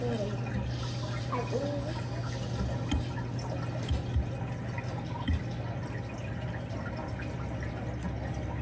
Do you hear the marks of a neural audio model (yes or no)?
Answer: no